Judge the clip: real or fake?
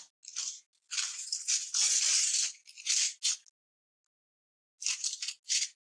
real